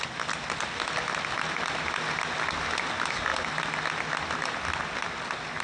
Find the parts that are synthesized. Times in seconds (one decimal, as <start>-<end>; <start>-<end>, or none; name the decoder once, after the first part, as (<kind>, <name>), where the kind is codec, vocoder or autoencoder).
none

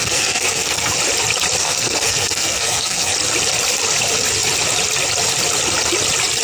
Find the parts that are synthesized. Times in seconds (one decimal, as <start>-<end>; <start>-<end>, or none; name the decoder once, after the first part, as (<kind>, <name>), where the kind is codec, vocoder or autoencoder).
0.0-0.9 (codec, SNAC); 1.6-3.1

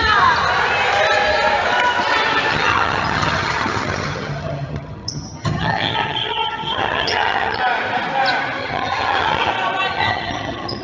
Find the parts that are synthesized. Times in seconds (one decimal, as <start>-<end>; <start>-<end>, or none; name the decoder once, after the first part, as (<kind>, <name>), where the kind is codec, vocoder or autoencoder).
2.5-7.6 (vocoder, HiFi-GAN); 8.6-9.5; 9.9-10.8

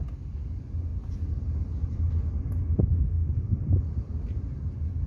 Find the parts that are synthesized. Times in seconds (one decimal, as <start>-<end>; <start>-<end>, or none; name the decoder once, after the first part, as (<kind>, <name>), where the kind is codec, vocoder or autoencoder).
2.9-3.6 (autoencoder, DAC-VAE)

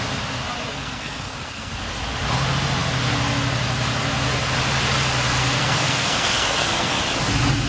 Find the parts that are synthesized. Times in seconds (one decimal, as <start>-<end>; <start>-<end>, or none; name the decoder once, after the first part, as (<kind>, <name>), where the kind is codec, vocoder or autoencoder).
0.7-1.7 (codec, SNAC); 5.4-7.0

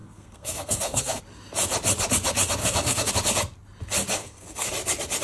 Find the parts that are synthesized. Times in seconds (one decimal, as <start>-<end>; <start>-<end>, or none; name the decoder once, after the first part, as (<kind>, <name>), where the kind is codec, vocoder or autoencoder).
0.0-1.2 (codec, SNAC); 2.6-3.1; 4.2-4.7

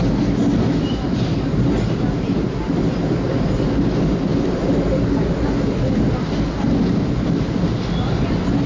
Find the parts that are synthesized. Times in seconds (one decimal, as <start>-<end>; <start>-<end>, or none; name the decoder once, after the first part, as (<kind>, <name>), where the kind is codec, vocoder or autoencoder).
none

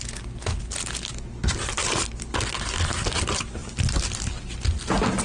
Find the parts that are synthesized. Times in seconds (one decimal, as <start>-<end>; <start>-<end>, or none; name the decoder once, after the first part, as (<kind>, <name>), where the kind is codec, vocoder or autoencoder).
none